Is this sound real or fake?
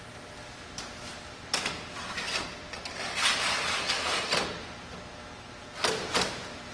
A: real